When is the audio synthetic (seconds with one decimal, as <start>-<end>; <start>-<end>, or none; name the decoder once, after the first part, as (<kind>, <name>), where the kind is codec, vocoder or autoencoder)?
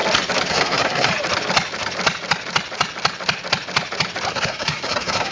0.5-1.1 (codec, SNAC); 4.3-5.3